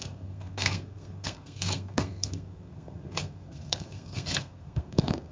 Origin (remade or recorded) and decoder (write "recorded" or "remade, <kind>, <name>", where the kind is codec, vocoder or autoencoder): remade, codec, SNAC